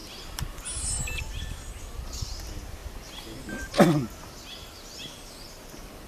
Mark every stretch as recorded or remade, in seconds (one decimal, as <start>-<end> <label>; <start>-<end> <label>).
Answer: 0.0-6.1 recorded